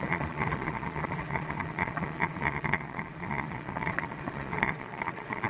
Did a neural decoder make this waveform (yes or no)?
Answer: yes